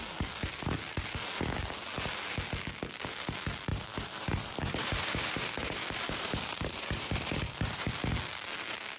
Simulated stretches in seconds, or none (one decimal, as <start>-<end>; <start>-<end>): 3.7-7.9